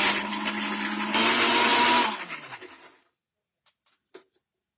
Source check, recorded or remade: recorded